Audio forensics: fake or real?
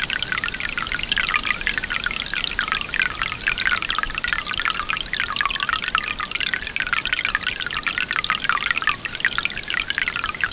real